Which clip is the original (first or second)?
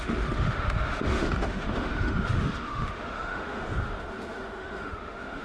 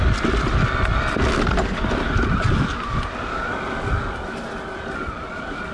second